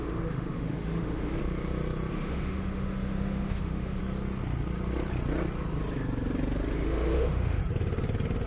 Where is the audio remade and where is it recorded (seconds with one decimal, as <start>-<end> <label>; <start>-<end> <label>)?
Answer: 0.0-1.4 remade; 1.4-2.1 recorded; 2.1-4.0 remade; 4.0-6.7 recorded; 6.7-7.6 remade; 7.6-8.5 recorded